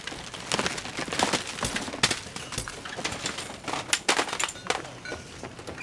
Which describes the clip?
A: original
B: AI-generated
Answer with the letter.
A